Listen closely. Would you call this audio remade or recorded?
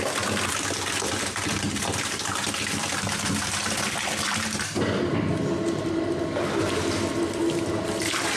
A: remade